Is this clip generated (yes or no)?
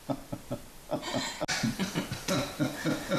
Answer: no